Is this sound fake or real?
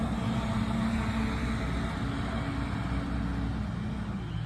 real